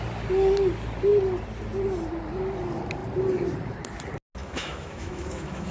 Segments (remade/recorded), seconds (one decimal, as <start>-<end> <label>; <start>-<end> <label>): 0.0-4.4 recorded; 4.4-5.7 remade